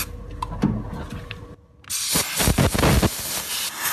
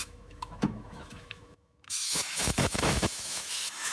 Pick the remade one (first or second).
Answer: second